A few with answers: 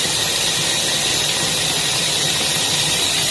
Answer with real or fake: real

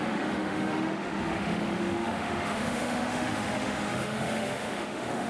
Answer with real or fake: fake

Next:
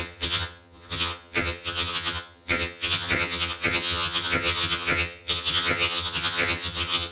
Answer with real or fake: fake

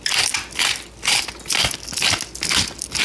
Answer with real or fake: real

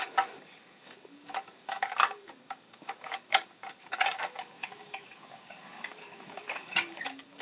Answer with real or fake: fake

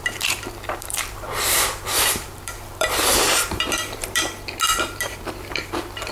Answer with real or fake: fake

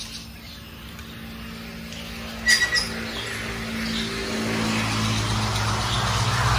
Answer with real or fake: real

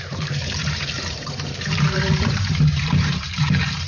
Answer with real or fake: fake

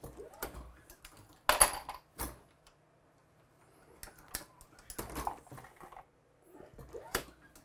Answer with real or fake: real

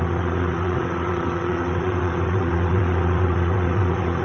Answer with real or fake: fake